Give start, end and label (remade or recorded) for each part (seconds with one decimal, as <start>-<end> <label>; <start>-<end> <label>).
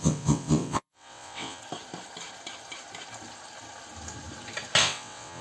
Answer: 0.0-1.6 remade; 1.6-4.8 recorded; 4.8-5.4 remade